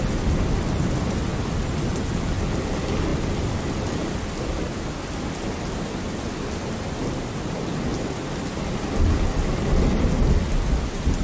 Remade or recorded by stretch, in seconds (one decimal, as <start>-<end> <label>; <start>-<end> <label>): 0.0-11.2 recorded